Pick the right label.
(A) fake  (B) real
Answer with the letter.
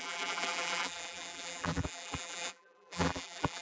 A